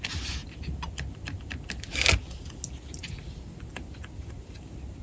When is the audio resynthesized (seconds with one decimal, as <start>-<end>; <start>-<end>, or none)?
none